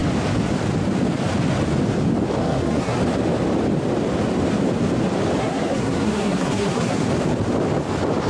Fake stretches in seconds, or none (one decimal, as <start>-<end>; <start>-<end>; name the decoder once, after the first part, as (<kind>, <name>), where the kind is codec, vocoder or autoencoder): 2.4-3.0 (codec, SNAC); 5.4-7.1